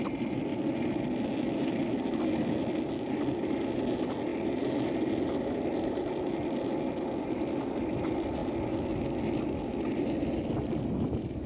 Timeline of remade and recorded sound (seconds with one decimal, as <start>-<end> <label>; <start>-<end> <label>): 0.0-4.3 recorded; 4.3-4.9 remade; 4.9-11.5 recorded